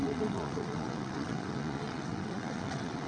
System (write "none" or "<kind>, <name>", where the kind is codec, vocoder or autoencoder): vocoder, WaveNeXt